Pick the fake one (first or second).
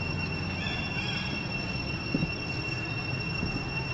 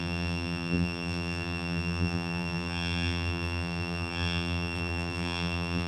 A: second